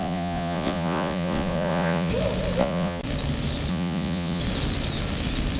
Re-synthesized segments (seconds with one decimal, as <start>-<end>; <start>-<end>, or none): 0.0-2.1; 2.6-3.0; 3.7-4.4